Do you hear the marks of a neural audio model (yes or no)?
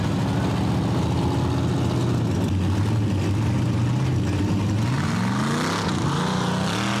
no